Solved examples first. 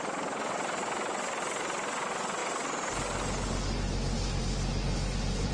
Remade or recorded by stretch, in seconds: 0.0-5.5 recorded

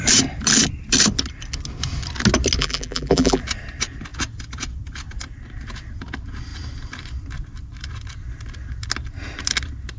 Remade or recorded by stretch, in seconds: 0.0-2.6 recorded; 2.6-3.4 remade; 3.4-10.0 recorded

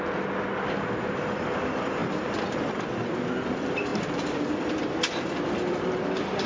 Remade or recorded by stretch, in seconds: 0.0-6.5 recorded

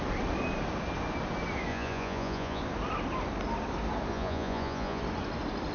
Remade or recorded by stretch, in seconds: 0.0-1.7 recorded; 1.7-2.6 remade; 2.6-4.1 recorded; 4.1-5.0 remade; 5.0-5.7 recorded

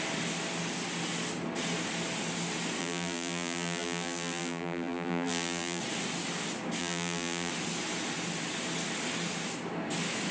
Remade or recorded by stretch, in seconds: 0.0-2.8 recorded; 2.8-5.8 remade; 5.8-6.8 recorded; 6.8-7.5 remade; 7.5-10.3 recorded

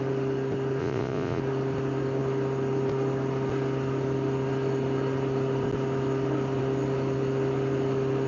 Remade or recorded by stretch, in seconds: 0.0-0.8 recorded; 0.8-1.4 remade; 1.4-8.3 recorded

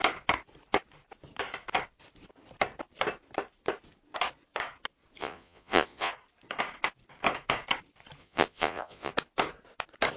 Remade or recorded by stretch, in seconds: 0.0-5.2 recorded; 5.2-6.1 remade; 6.1-8.2 recorded; 8.2-9.1 remade; 9.1-10.2 recorded